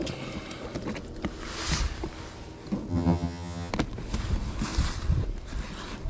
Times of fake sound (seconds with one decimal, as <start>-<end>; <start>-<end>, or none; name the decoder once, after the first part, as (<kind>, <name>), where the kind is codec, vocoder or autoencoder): 2.9-3.7 (vocoder, HiFi-GAN)